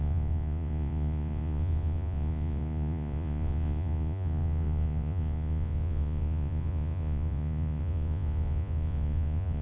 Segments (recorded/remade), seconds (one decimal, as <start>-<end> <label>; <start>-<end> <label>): 0.0-9.6 remade